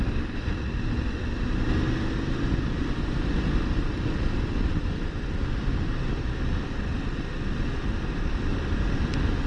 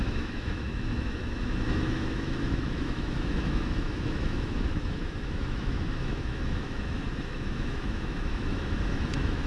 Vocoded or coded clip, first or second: second